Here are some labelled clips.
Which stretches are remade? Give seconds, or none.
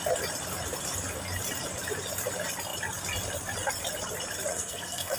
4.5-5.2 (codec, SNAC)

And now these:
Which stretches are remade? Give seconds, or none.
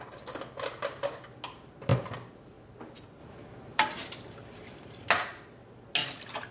3.2-5.1 (vocoder, BigVGAN v2)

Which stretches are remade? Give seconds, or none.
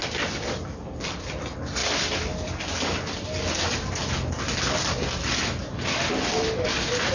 none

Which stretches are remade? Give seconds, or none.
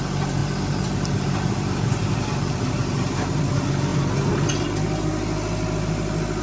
0.4-3.4 (vocoder, BigVGAN v2)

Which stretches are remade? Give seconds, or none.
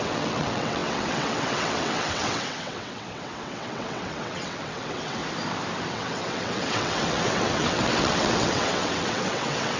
0.0-5.2 (vocoder, WaveNeXt); 5.9-9.8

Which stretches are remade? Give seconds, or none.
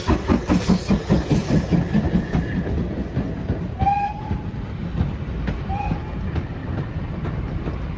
none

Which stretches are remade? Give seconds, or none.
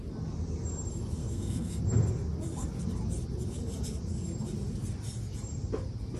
1.2-1.8 (codec, SNAC)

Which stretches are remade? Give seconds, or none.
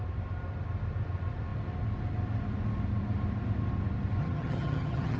4.2-5.2 (vocoder, HiFi-GAN)